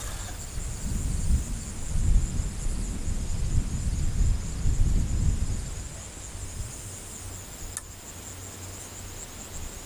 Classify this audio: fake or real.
real